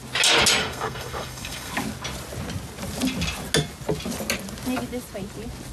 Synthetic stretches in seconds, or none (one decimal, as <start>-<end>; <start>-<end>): 0.6-1.7